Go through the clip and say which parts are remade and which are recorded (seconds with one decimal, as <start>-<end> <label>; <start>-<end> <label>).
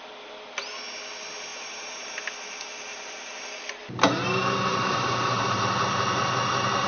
0.0-1.5 recorded; 1.5-2.2 remade; 2.2-2.9 recorded; 2.9-3.5 remade; 3.5-4.7 recorded; 4.7-5.4 remade; 5.4-6.9 recorded